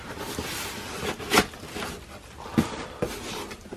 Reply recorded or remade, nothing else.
recorded